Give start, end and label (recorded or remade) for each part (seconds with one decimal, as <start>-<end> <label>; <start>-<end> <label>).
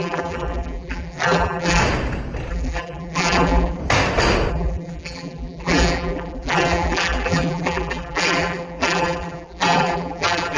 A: 0.0-1.8 remade; 1.8-2.5 recorded; 2.5-3.8 remade; 3.8-4.5 recorded; 4.5-10.6 remade